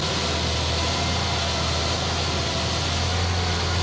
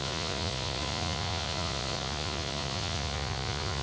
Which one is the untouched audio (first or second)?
first